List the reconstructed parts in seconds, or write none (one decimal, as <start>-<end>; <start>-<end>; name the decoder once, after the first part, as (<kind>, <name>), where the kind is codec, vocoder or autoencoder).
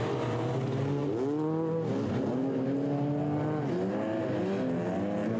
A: none